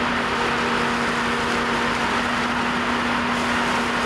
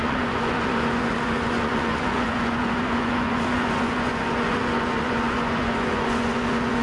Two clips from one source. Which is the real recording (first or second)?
first